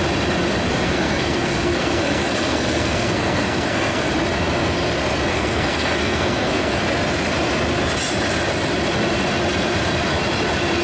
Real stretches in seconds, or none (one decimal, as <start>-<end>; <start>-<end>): 0.0-0.7; 4.1-5.3; 6.8-10.8